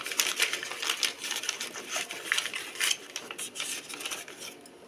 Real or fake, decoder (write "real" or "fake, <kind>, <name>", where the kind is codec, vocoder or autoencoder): real